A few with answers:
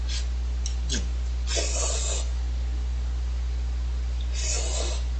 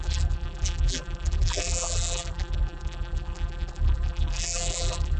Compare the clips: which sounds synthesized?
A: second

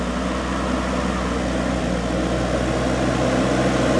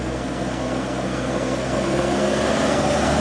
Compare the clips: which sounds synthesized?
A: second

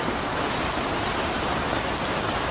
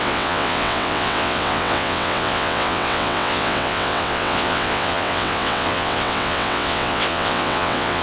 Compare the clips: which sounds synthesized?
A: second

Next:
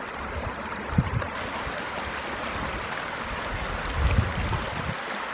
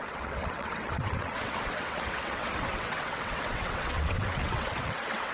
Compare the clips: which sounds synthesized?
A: second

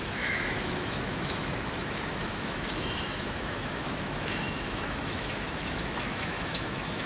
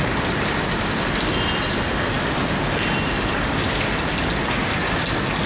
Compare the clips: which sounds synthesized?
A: first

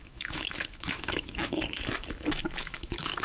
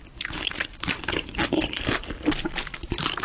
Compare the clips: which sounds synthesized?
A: first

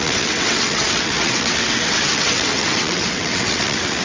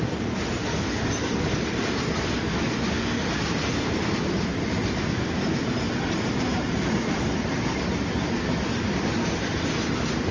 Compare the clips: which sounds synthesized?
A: first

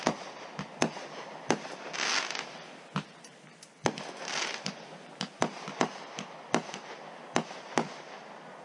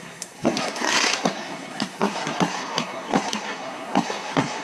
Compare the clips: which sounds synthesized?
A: second